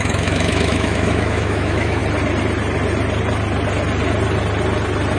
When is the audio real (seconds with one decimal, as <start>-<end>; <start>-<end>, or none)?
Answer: 2.0-5.2